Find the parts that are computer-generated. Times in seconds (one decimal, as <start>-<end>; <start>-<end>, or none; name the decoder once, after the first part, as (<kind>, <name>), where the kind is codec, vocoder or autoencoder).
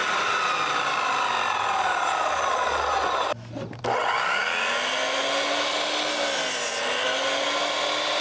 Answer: none